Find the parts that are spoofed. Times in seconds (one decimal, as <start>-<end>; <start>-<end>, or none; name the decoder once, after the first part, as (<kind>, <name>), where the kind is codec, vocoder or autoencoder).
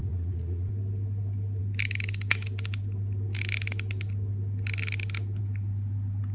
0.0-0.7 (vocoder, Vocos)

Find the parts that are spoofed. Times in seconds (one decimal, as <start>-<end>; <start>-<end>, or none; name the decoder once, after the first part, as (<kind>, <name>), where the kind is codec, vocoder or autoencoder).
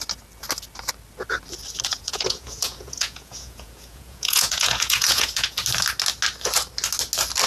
1.9-5.6 (vocoder, Vocos)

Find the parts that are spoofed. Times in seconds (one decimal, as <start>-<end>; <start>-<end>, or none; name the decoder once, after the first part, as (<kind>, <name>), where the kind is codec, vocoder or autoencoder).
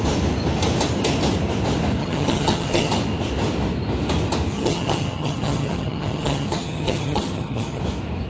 2.0-2.9 (vocoder, HiFi-GAN); 4.5-7.8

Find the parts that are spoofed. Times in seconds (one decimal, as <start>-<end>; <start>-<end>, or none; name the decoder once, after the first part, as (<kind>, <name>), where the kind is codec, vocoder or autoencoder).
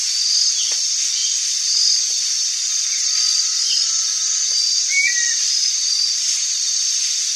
none